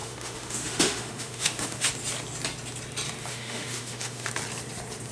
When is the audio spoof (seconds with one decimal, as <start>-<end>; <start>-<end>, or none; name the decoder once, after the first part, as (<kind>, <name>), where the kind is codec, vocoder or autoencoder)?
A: 0.0-1.9 (autoencoder, DAC-VAE); 3.3-4.3